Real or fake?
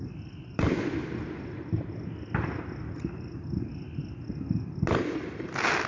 real